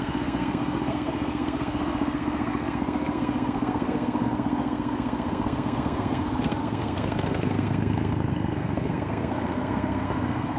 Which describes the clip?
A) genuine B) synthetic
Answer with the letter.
B